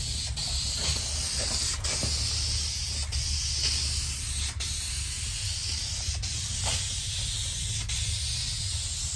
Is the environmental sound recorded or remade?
recorded